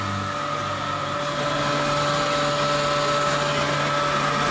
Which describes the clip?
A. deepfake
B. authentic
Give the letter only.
B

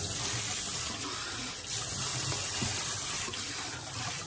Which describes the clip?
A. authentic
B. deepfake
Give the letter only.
A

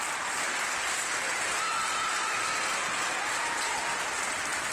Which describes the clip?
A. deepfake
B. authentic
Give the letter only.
B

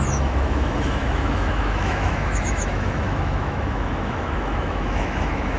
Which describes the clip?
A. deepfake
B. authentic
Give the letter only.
A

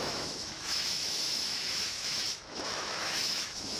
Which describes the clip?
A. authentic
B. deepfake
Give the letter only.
B